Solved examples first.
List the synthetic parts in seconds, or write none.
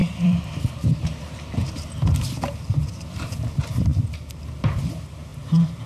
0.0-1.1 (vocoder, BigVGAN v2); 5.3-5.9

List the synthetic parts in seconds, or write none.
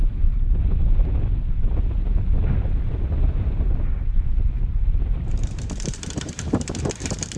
0.0-1.4 (vocoder, BigVGAN v2); 5.2-7.4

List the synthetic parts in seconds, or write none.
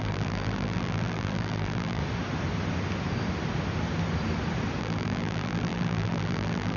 0.0-2.0 (vocoder, BigVGAN v2); 4.8-6.8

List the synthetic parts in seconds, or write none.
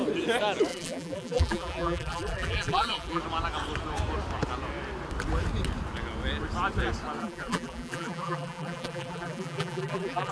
0.7-3.2 (vocoder, BigVGAN v2); 7.2-10.3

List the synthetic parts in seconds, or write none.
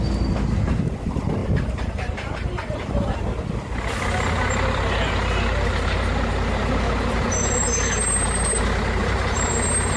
1.4-3.2 (vocoder, BigVGAN v2); 9.0-9.5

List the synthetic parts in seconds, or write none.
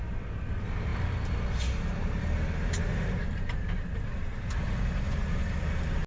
1.9-5.6 (vocoder, BigVGAN v2)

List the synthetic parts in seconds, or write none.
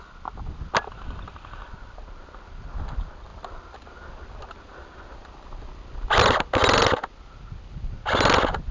none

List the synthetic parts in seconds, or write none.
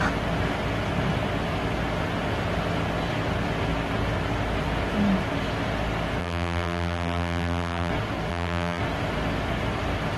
6.2-7.9 (vocoder, BigVGAN v2); 8.3-8.8